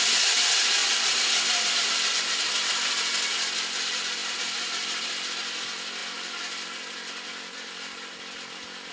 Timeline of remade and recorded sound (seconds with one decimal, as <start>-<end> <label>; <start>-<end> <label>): 0.0-0.8 recorded; 0.8-1.9 remade; 1.9-4.2 recorded; 4.2-5.1 remade; 5.1-8.9 recorded